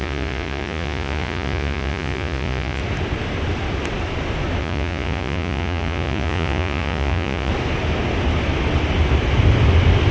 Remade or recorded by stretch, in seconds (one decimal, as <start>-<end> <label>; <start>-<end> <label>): 0.0-2.8 remade; 2.8-4.6 recorded; 4.6-7.5 remade; 7.5-10.1 recorded